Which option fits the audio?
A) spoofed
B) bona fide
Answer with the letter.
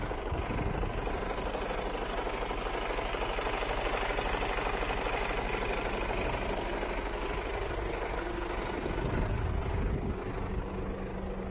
B